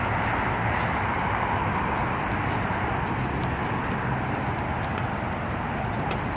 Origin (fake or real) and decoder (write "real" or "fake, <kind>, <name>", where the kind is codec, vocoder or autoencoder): real